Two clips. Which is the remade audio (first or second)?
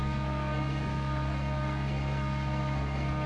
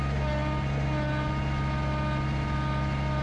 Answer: first